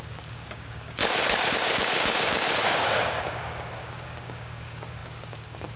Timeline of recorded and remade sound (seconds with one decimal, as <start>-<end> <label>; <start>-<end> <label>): 0.0-1.0 remade; 1.0-1.5 recorded; 1.5-5.8 remade